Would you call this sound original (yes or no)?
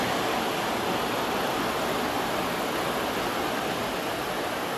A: yes